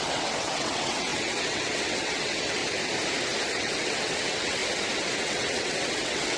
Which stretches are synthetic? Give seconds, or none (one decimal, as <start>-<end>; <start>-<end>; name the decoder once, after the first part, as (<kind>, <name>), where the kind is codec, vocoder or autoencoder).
0.0-2.6 (vocoder, WaveNeXt); 3.5-4.6; 5.2-6.4